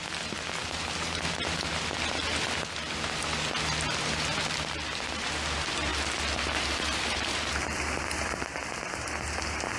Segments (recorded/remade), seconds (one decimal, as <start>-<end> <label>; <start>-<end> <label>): 0.0-9.8 recorded